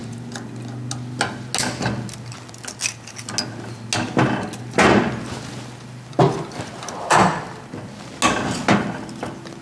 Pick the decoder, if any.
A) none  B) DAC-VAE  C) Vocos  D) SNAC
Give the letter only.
A